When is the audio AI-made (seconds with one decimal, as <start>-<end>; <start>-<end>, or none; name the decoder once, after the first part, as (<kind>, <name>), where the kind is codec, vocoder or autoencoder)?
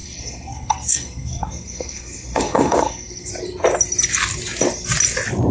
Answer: 0.0-3.3 (codec, SNAC)